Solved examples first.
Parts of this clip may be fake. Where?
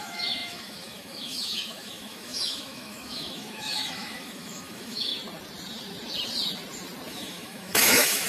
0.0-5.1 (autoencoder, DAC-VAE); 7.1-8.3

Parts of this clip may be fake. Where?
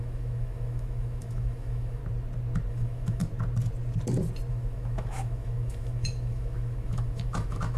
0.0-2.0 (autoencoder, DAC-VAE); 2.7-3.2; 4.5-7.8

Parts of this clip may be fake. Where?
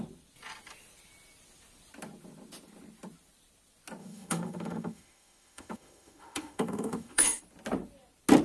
4.0-7.4 (autoencoder, DAC-VAE)